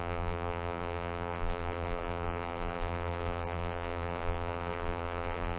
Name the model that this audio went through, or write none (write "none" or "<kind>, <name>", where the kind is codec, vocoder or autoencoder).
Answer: vocoder, BigVGAN v2